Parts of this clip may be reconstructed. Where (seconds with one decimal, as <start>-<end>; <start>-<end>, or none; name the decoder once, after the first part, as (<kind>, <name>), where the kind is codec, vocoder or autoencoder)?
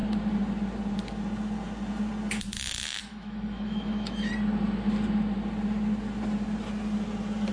3.1-4.3 (autoencoder, DAC-VAE)